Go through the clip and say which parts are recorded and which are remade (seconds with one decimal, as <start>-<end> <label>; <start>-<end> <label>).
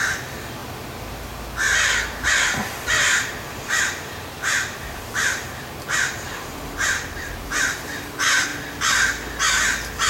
0.0-0.6 remade; 0.6-2.3 recorded; 2.3-8.5 remade; 8.5-10.1 recorded